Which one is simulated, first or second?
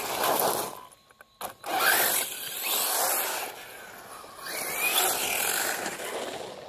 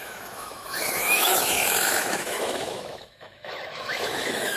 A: second